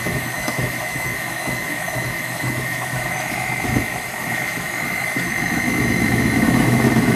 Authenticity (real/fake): fake